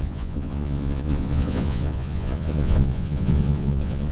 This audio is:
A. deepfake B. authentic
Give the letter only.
A